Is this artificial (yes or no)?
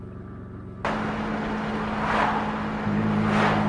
no